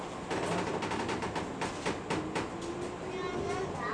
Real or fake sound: real